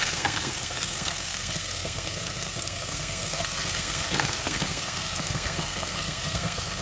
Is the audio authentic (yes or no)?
no